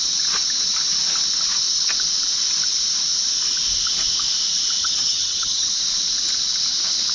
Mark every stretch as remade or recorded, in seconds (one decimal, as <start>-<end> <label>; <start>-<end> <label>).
0.0-4.8 recorded; 4.8-5.7 remade; 5.7-7.1 recorded